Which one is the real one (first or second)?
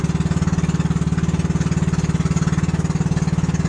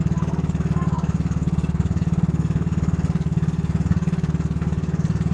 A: first